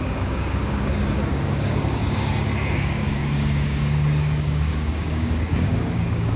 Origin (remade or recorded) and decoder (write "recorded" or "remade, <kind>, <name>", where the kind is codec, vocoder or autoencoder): remade, codec, DAC